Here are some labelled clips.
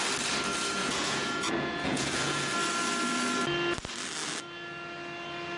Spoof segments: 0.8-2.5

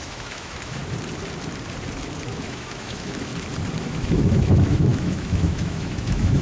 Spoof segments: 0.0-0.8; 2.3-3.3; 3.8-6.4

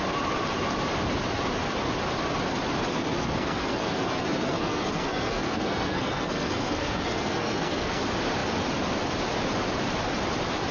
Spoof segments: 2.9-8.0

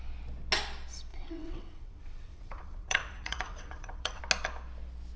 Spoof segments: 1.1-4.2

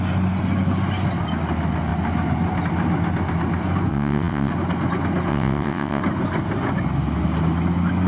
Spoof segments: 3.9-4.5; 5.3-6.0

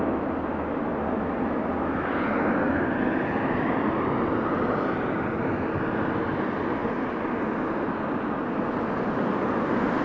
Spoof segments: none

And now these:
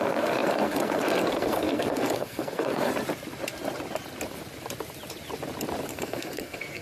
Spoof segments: 0.0-2.9; 5.9-6.8

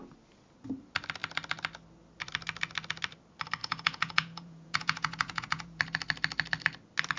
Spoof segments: 3.6-5.8